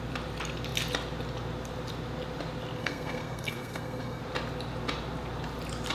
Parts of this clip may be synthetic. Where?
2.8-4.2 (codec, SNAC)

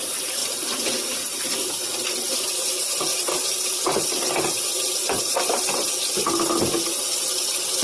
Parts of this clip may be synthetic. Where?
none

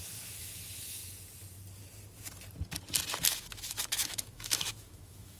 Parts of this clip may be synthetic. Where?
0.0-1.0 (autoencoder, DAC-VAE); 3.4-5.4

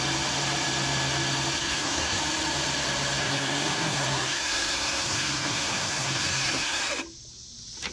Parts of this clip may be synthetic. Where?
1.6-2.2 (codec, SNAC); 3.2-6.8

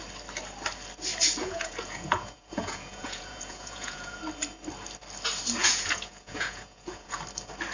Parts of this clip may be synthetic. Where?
1.4-4.2 (vocoder, Vocos); 5.6-7.2

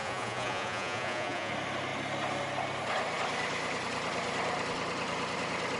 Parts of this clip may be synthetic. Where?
0.0-1.5 (vocoder, Vocos)